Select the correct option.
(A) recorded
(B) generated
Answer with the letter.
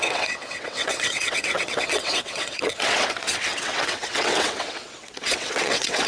B